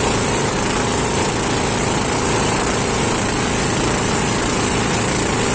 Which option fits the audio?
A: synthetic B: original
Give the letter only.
B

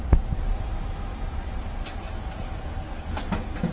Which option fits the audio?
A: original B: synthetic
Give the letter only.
A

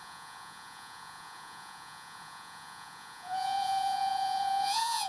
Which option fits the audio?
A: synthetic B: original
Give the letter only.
A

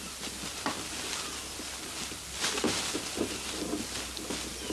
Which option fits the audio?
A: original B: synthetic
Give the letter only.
A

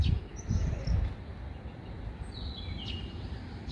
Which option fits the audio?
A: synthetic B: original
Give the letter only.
A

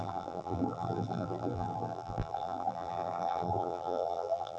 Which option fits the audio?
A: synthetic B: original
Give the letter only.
A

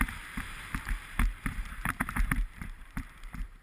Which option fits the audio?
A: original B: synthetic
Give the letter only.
B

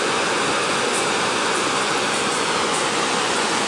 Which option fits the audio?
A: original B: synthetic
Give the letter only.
B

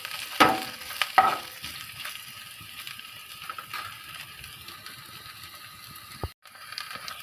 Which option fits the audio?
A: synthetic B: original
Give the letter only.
B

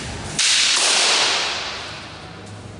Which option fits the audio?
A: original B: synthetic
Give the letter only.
A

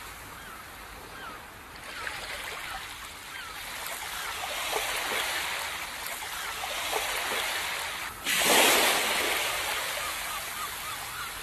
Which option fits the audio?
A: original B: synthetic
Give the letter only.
A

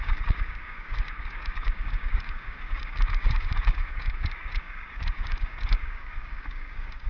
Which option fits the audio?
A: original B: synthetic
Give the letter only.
B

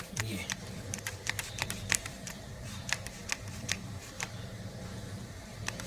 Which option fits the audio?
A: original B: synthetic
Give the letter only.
B